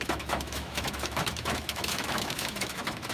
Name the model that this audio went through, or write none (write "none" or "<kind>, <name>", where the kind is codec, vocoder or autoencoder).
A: autoencoder, DAC-VAE